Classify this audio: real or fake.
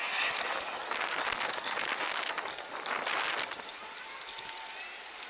real